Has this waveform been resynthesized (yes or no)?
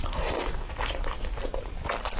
no